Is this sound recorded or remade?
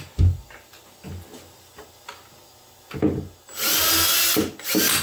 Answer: recorded